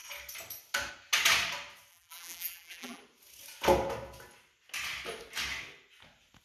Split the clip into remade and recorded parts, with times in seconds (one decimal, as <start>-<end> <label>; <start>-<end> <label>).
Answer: 0.0-1.9 recorded; 1.9-3.0 remade; 3.0-6.4 recorded